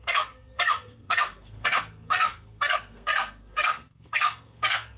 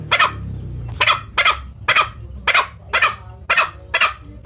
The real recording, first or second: second